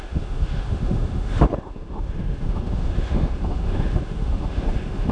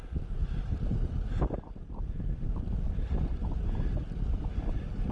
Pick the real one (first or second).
second